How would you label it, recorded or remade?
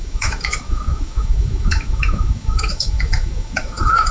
remade